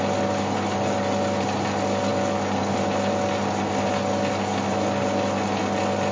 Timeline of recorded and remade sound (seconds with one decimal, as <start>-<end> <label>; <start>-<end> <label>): 0.0-6.1 recorded